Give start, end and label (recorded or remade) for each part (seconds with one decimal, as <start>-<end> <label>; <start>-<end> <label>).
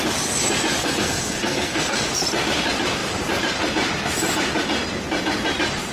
0.0-0.8 recorded; 0.8-2.1 remade; 2.1-5.9 recorded